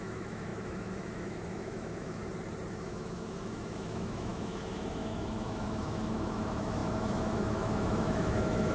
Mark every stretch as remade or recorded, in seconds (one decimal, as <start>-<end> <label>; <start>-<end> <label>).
0.0-2.2 remade; 2.2-2.7 recorded; 2.7-8.7 remade